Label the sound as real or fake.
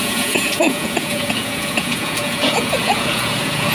fake